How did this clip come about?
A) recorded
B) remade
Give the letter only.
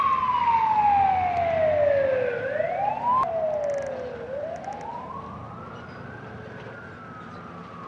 A